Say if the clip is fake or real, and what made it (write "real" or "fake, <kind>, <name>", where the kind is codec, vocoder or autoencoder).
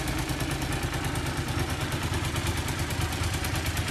real